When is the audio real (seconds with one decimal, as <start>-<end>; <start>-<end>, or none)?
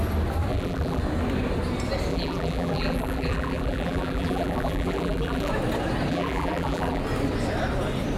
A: 0.0-0.5; 1.0-2.1; 5.5-6.1; 7.0-8.2